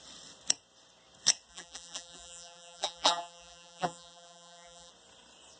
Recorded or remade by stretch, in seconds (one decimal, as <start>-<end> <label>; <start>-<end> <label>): 0.0-1.5 recorded; 1.5-4.9 remade; 4.9-5.6 recorded